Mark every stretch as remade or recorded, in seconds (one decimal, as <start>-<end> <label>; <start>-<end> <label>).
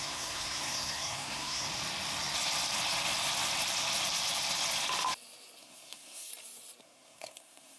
0.0-1.7 remade; 1.7-5.6 recorded; 5.6-6.3 remade; 6.3-6.8 recorded; 6.8-7.8 remade